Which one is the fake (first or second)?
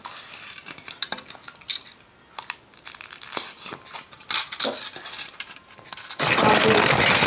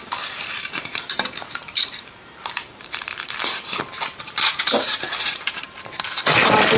second